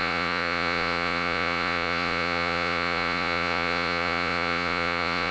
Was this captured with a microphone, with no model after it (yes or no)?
no